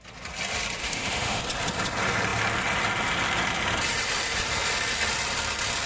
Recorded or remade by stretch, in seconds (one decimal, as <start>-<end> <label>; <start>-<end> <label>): 0.0-0.8 recorded; 0.8-1.4 remade; 1.4-5.9 recorded